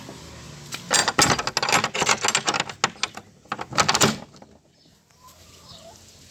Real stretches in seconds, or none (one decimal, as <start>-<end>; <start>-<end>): 0.0-6.3